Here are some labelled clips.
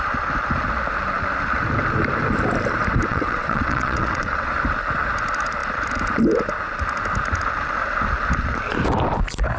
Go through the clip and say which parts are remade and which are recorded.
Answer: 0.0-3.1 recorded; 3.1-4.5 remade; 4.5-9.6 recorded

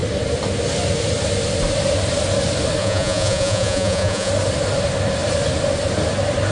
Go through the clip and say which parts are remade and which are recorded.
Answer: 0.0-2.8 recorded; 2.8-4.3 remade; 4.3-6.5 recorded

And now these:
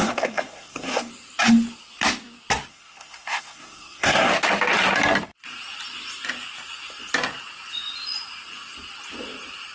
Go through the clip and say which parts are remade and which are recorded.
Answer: 0.0-1.1 remade; 1.1-2.7 recorded; 2.7-4.3 remade; 4.3-9.7 recorded

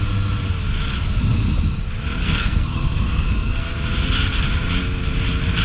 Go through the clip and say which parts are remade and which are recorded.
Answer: 0.0-2.2 recorded; 2.2-3.7 remade; 3.7-5.6 recorded

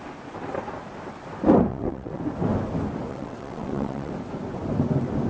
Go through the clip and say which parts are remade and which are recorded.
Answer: 0.0-1.7 recorded; 1.7-2.2 remade; 2.2-3.1 recorded; 3.1-4.1 remade; 4.1-5.3 recorded